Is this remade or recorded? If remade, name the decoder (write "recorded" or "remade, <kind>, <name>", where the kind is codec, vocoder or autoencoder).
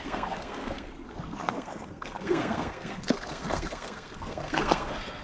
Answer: remade, codec, SNAC